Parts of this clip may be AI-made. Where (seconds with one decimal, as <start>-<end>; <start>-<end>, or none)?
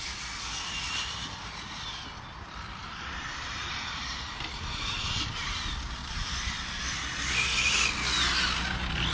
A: 2.8-5.6; 6.0-6.8